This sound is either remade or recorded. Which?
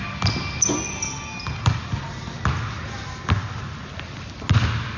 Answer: recorded